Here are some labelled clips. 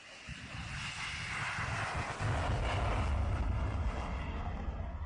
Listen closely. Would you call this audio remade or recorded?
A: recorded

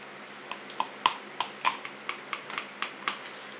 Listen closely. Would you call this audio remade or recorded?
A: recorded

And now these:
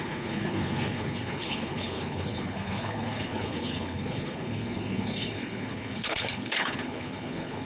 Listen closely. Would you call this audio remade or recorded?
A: remade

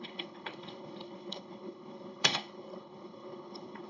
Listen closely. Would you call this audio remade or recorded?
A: remade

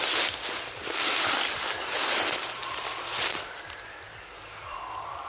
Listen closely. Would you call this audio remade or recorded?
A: recorded